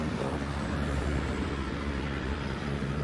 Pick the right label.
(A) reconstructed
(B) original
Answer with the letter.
A